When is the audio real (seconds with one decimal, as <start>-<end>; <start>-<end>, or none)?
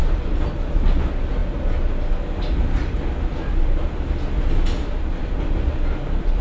0.0-6.4